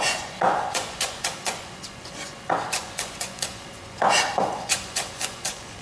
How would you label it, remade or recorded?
remade